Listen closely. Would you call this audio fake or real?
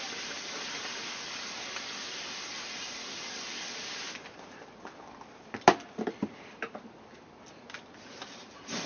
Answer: fake